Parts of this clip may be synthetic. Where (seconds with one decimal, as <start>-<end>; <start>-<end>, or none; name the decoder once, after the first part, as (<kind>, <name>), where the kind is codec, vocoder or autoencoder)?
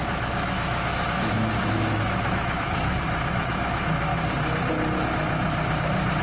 0.0-4.1 (autoencoder, DAC-VAE)